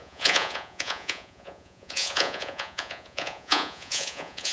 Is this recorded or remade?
remade